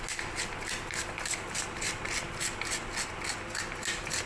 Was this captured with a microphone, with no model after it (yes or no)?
yes